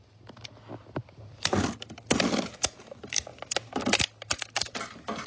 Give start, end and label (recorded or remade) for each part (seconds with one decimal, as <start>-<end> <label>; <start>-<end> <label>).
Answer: 0.0-3.3 recorded; 3.3-3.8 remade; 3.8-5.3 recorded